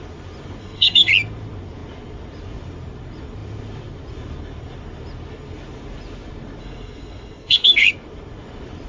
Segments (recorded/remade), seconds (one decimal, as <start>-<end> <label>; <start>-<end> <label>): 0.0-0.6 recorded; 0.6-1.1 remade; 1.1-6.6 recorded; 6.6-7.9 remade; 7.9-8.9 recorded